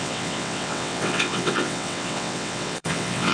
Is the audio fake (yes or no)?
yes